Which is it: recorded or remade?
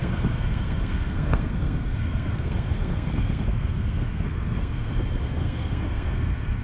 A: remade